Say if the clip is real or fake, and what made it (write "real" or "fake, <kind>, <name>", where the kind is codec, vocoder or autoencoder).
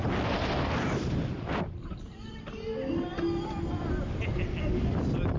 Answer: real